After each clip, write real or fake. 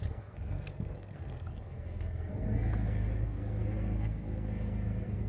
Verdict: fake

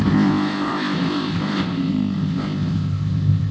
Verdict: fake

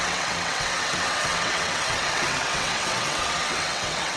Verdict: fake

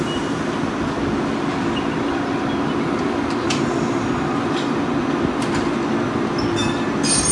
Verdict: real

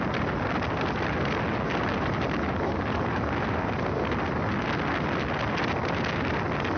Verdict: real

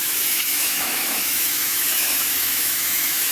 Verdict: fake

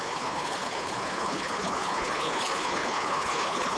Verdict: fake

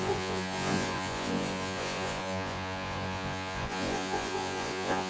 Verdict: fake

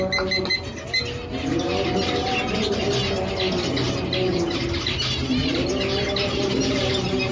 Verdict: real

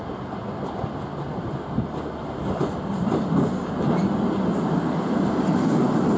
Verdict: real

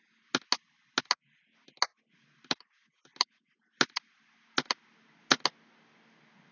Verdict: real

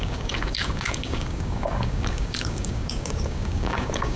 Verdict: fake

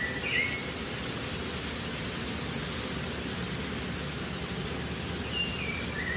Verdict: real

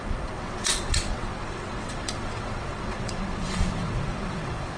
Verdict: fake